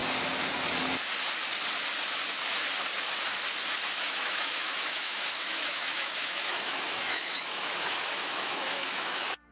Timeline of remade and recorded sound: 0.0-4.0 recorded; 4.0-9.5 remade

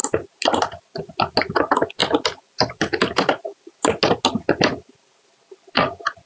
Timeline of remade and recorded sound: 0.0-6.3 recorded

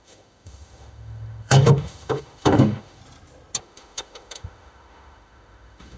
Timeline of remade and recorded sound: 0.0-3.0 remade; 3.0-3.6 recorded; 3.6-6.0 remade

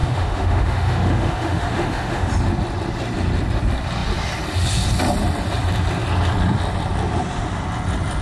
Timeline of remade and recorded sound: 0.0-2.3 remade; 2.3-8.2 recorded

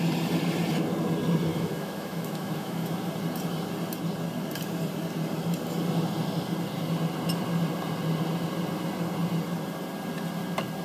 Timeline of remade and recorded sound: 0.0-1.5 recorded; 1.5-3.1 remade; 3.1-10.8 recorded